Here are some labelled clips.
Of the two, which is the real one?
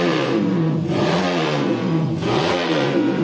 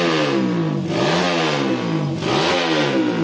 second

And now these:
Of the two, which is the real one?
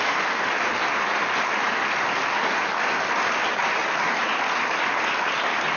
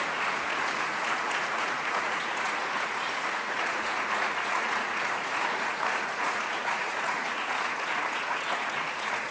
first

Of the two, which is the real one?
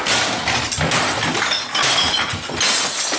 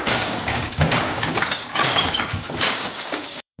first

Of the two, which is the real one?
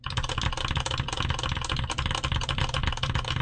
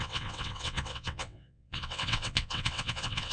first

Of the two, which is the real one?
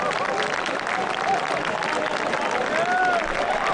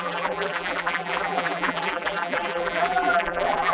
first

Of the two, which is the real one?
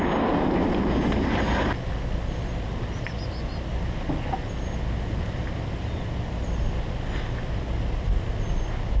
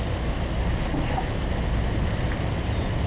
first